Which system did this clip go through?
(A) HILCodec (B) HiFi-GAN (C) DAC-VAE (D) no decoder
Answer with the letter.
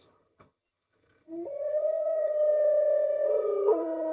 B